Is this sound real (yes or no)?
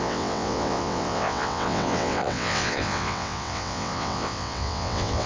no